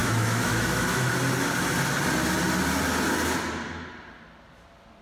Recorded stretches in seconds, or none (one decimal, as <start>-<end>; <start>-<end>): 1.1-5.0